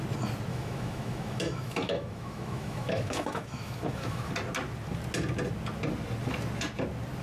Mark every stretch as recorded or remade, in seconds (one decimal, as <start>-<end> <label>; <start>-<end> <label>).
0.0-0.5 recorded; 0.5-4.3 remade; 4.3-7.2 recorded